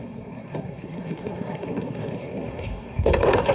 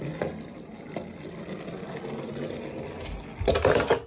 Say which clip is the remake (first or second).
first